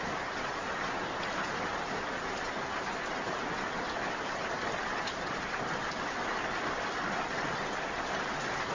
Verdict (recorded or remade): recorded